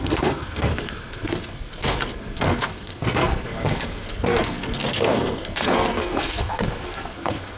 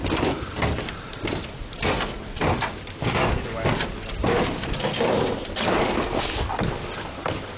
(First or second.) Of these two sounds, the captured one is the second